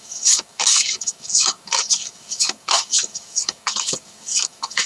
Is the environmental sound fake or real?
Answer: fake